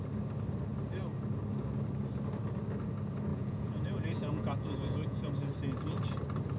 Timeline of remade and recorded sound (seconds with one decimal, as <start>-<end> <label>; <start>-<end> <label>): 0.0-3.3 recorded; 3.3-5.3 remade; 5.3-6.6 recorded